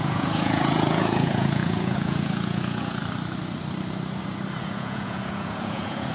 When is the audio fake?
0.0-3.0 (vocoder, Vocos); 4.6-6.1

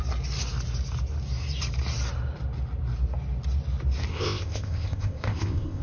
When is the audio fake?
4.1-5.8 (codec, ZipCodec)

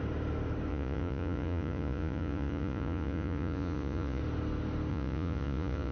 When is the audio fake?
0.7-4.2 (vocoder, Vocos); 4.9-5.9

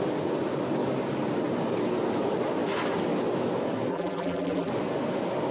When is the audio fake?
3.9-4.7 (vocoder, BigVGAN v2)

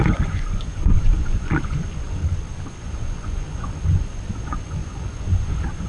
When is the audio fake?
0.0-2.2 (vocoder, Vocos); 2.7-5.9